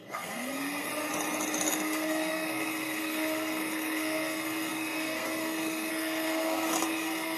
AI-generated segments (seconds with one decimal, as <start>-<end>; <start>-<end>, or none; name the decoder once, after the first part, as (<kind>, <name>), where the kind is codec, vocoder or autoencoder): 0.0-0.9 (codec, SNAC); 1.7-7.4